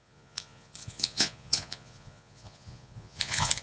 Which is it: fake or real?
fake